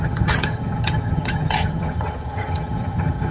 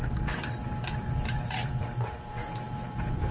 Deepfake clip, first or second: first